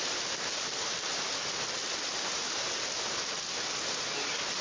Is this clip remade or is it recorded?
recorded